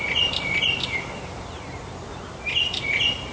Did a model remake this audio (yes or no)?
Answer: no